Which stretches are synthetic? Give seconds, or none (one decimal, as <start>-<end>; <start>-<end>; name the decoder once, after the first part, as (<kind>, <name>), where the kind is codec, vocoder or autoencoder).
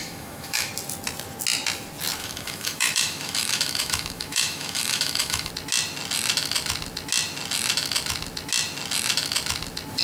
0.0-0.7 (autoencoder, DAC-VAE); 2.2-5.5